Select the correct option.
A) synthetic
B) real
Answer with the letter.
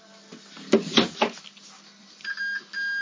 B